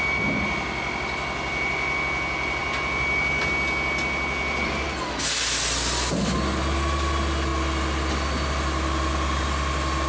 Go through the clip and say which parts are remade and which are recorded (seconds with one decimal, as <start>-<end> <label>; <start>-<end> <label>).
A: 0.0-10.1 recorded